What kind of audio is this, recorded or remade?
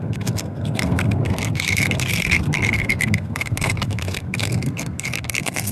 remade